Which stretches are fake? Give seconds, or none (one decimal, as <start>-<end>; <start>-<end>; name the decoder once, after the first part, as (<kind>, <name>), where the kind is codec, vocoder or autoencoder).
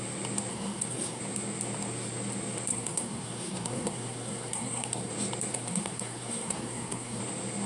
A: 0.5-1.2 (codec, SNAC); 2.7-5.1; 5.5-7.2